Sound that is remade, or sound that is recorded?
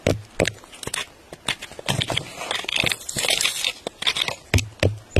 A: recorded